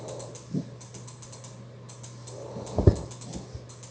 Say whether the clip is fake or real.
real